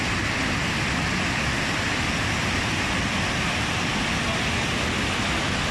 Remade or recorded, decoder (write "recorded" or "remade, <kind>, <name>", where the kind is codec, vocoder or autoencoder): recorded